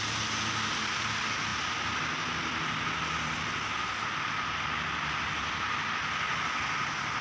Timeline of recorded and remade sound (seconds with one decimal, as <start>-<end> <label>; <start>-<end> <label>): 0.0-7.2 recorded